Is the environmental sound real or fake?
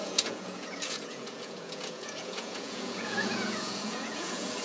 fake